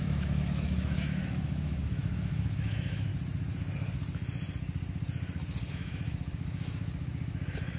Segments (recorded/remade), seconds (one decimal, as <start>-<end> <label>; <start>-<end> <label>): 0.0-3.1 remade; 3.1-5.7 recorded; 5.7-7.8 remade